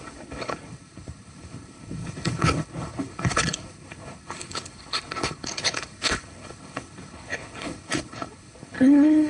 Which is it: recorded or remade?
remade